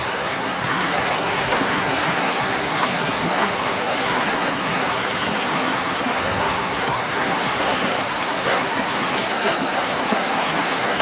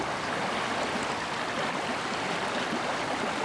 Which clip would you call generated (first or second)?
first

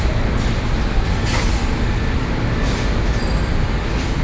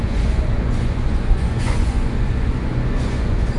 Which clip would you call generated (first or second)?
second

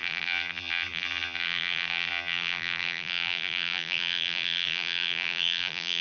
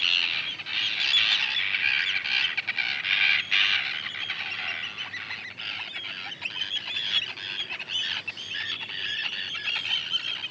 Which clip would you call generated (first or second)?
first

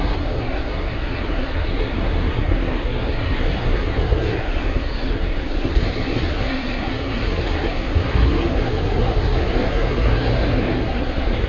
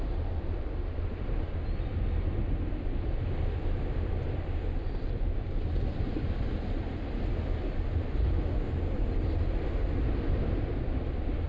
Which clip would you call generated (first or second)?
first